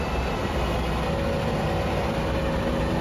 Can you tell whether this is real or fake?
real